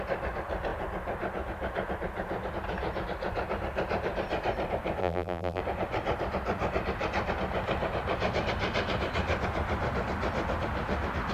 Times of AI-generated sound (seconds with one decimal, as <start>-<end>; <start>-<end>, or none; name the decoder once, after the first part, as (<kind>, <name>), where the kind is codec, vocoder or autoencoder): 5.0-5.6 (vocoder, BigVGAN v2)